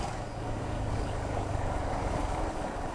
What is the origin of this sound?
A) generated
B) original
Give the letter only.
A